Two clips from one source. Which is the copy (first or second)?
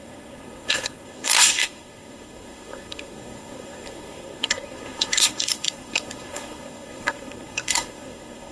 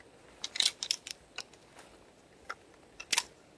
first